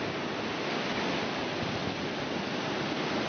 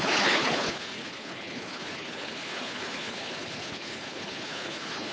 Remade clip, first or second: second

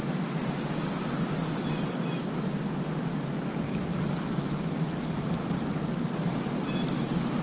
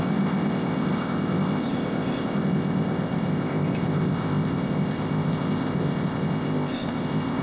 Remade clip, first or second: second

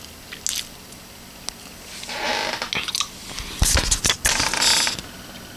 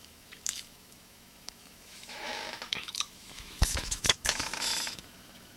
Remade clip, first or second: second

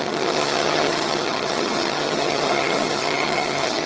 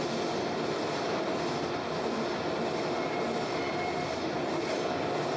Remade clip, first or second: first